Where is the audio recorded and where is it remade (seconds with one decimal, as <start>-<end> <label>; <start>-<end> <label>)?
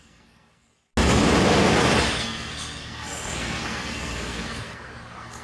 0.0-0.7 remade; 0.7-2.2 recorded; 2.2-5.4 remade